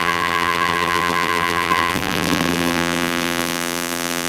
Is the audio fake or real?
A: fake